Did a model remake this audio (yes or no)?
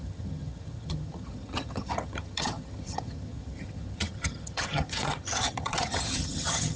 yes